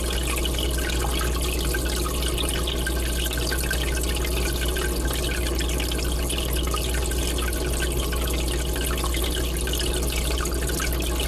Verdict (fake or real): real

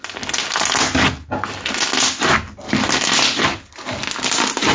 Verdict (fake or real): real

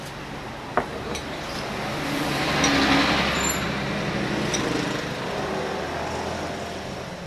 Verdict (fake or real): real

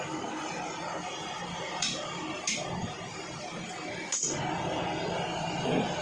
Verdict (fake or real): real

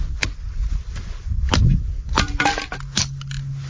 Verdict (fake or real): real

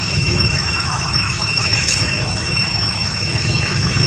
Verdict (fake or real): fake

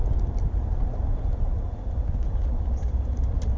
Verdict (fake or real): real